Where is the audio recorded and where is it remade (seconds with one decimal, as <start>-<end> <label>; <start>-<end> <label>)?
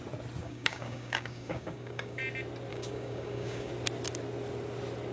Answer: 0.0-0.4 recorded; 0.4-2.2 remade; 2.2-2.7 recorded; 2.7-3.7 remade; 3.7-5.1 recorded